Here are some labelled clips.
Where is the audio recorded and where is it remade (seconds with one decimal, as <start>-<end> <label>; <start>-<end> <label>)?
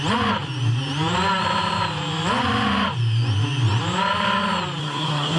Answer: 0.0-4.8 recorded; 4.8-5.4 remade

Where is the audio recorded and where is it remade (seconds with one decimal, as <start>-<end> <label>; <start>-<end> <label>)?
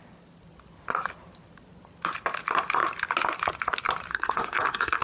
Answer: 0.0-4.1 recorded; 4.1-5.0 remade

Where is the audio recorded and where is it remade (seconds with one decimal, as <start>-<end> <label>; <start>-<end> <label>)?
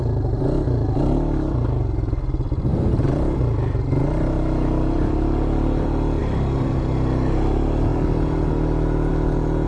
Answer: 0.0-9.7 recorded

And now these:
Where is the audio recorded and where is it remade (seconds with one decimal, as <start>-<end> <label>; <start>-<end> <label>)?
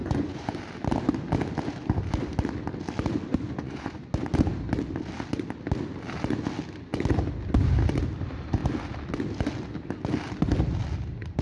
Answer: 0.0-0.6 remade; 0.6-3.3 recorded; 3.3-4.1 remade; 4.1-11.4 recorded